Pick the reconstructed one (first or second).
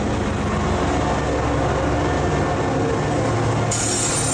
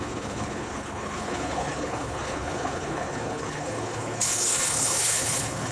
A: second